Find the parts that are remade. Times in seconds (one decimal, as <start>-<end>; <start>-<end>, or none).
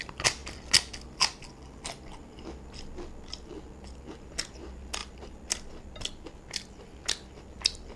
none